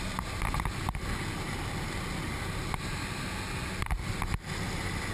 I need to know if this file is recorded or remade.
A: recorded